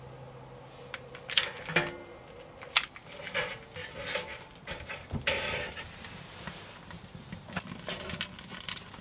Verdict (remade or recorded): recorded